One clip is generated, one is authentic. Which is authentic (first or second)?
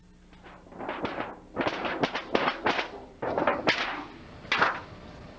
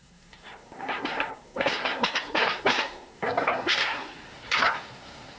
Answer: first